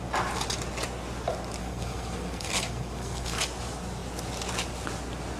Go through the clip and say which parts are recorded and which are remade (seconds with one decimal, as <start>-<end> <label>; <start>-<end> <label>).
0.0-1.6 recorded; 1.6-3.4 remade; 3.4-5.4 recorded